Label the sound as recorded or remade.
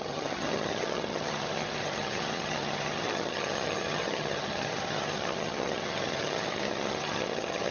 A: remade